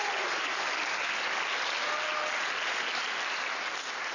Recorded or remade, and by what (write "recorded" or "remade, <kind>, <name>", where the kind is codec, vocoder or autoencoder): recorded